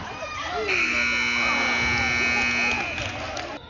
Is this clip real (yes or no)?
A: yes